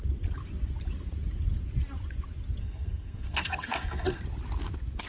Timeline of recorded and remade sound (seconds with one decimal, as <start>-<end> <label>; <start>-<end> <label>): 0.0-2.6 recorded; 2.6-4.2 remade; 4.2-5.1 recorded